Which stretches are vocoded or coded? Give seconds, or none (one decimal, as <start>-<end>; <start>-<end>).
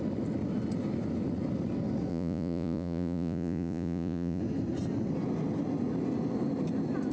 2.1-4.4